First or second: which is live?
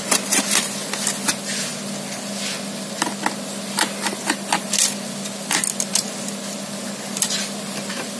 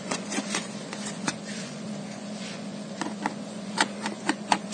first